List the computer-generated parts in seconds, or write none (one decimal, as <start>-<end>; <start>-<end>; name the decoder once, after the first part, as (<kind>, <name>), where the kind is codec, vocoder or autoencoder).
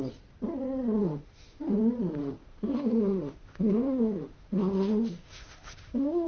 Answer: 1.0-1.8 (autoencoder, DAC-VAE); 2.2-6.3